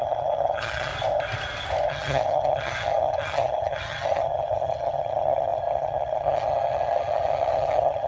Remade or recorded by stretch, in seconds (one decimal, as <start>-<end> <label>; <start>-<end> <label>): 0.0-0.9 remade; 0.9-1.9 recorded; 1.9-8.1 remade